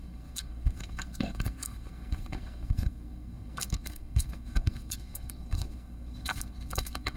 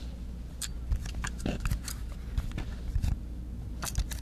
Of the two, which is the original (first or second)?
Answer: second